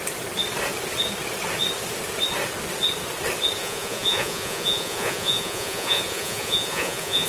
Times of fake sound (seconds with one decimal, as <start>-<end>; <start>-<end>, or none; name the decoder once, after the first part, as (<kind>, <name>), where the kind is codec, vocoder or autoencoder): 3.6-7.3 (vocoder, Vocos)